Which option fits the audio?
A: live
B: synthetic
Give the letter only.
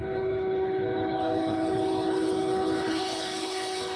B